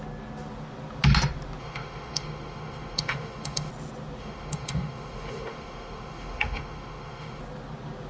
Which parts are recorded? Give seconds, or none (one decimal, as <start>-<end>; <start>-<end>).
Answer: 0.0-1.6; 3.7-4.2; 7.4-8.1